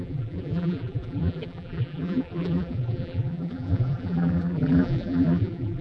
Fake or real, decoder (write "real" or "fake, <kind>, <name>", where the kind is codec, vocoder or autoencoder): fake, vocoder, BigVGAN v2